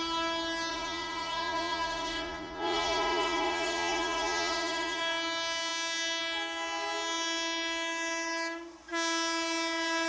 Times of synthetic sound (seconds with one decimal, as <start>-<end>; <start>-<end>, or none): 0.7-5.0